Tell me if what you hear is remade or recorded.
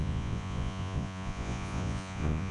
remade